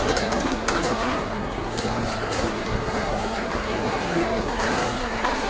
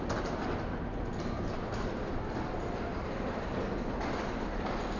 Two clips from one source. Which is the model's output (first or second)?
first